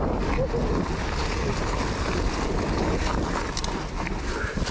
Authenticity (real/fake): real